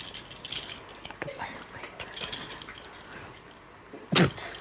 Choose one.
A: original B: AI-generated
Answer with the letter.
A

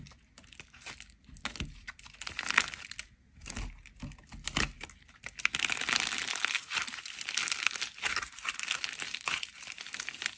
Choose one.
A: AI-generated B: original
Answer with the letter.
B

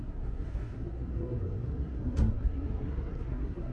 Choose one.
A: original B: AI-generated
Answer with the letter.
B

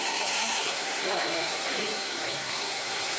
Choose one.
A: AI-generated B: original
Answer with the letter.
A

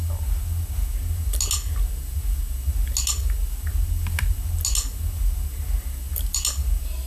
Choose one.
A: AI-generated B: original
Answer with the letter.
B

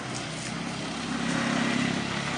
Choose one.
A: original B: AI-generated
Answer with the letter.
A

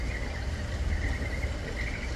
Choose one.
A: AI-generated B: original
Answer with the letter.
B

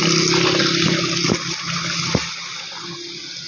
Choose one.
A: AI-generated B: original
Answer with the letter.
B